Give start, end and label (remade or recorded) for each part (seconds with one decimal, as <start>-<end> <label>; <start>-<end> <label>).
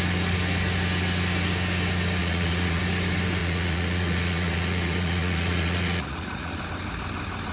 0.0-2.2 recorded; 2.2-2.8 remade; 2.8-3.4 recorded; 3.4-6.6 remade; 6.6-7.5 recorded